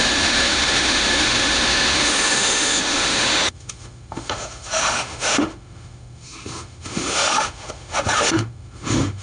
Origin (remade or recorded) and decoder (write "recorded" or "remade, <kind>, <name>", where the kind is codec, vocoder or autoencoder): remade, autoencoder, DAC-VAE